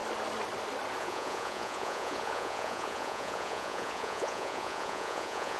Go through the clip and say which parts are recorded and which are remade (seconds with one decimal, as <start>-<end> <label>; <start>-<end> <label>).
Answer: 0.0-1.0 recorded; 1.0-5.6 remade